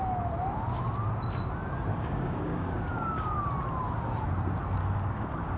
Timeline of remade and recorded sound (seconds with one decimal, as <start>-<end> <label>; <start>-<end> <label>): 0.0-1.9 recorded; 1.9-3.4 remade; 3.4-4.8 recorded; 4.8-5.6 remade